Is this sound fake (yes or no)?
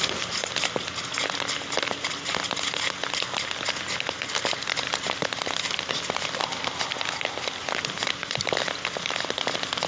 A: no